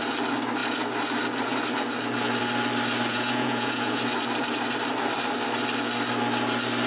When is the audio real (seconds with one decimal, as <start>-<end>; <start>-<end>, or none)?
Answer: 0.0-3.1; 4.0-6.9